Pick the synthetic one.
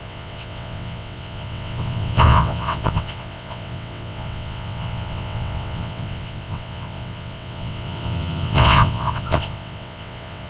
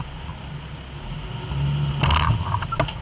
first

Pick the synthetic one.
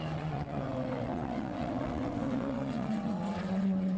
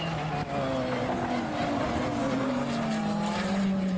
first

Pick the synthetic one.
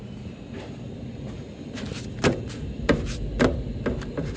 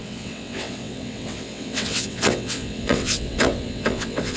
second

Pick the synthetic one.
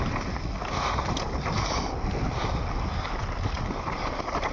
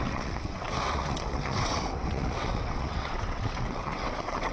second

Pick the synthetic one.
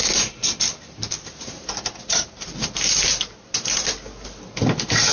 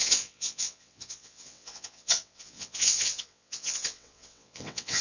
second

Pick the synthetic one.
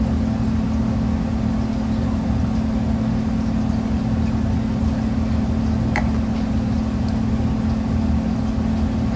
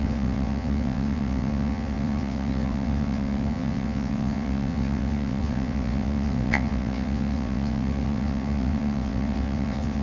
second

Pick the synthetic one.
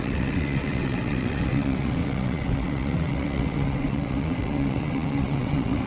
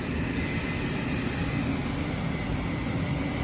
first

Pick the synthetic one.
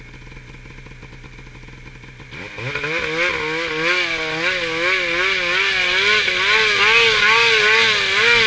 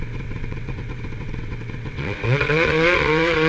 second